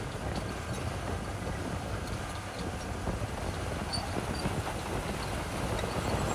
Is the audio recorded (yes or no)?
yes